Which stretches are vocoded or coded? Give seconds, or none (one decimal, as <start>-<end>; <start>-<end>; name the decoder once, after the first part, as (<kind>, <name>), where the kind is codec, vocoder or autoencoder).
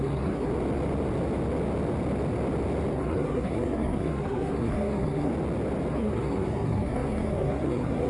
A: 0.0-0.5 (codec, SNAC); 2.9-5.3; 5.9-8.1